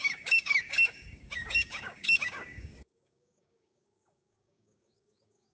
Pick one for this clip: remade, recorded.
remade